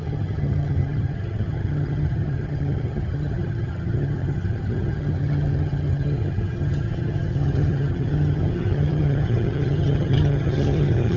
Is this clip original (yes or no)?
no